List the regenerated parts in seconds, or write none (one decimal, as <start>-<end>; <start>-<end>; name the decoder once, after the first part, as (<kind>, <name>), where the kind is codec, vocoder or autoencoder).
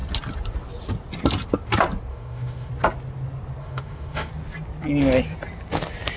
2.1-2.7 (autoencoder, DAC-VAE); 3.6-4.3